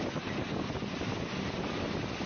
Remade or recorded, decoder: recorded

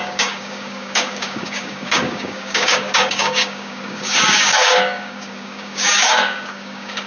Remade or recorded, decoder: remade, codec, DAC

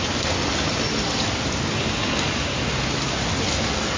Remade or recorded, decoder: recorded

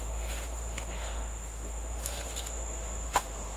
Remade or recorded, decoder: remade, autoencoder, DAC-VAE